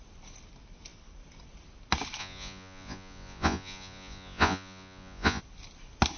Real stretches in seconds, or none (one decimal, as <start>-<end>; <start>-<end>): 0.0-2.2; 5.4-6.2